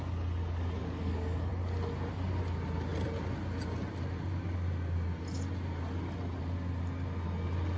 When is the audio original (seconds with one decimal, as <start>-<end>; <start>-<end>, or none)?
0.0-0.8; 1.5-7.8